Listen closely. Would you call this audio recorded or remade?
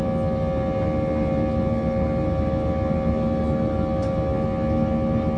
recorded